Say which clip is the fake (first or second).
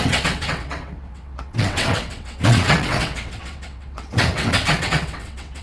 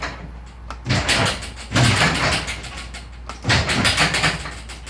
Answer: first